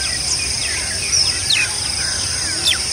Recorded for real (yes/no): yes